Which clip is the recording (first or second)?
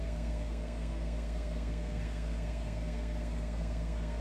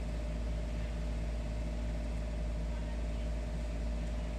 second